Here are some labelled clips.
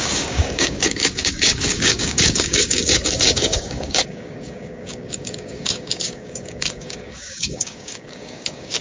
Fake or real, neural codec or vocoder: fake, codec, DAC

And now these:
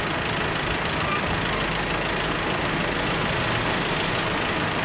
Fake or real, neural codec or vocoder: real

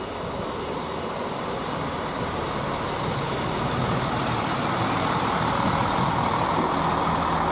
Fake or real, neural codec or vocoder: real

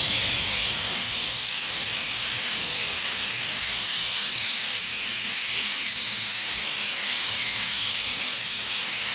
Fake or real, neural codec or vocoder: fake, codec, DAC